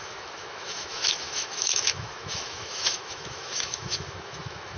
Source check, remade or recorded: remade